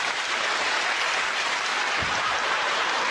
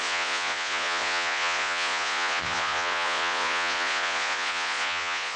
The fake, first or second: second